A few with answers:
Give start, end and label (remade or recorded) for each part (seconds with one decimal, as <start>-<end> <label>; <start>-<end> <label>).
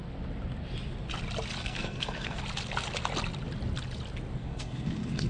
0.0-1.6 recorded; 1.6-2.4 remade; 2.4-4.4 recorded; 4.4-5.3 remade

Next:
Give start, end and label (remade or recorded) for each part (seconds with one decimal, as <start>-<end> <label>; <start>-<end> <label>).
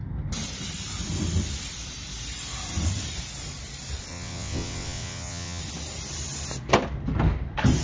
0.0-4.1 recorded; 4.1-5.6 remade; 5.6-7.8 recorded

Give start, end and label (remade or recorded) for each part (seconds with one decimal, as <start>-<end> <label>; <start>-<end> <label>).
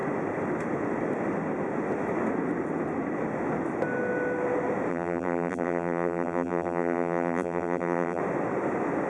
0.0-4.9 recorded; 4.9-8.2 remade; 8.2-9.1 recorded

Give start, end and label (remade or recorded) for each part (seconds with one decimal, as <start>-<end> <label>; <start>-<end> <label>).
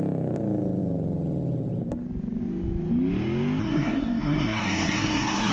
0.0-3.6 recorded; 3.6-5.5 remade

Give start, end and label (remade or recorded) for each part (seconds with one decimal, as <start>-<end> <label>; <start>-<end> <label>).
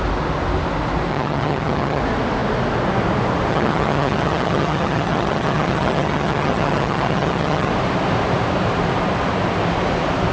0.0-1.1 recorded; 1.1-2.0 remade; 2.0-3.5 recorded; 3.5-7.7 remade; 7.7-10.3 recorded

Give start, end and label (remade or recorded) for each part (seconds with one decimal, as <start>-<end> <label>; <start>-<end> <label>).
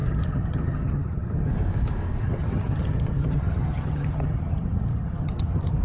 0.0-1.5 remade; 1.5-2.2 recorded; 2.2-5.8 remade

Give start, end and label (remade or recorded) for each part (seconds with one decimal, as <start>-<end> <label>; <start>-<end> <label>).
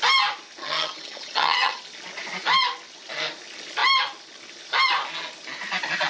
0.0-0.6 recorded; 0.6-1.8 remade; 1.8-6.1 recorded